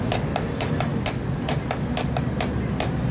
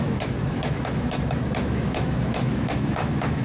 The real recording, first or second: first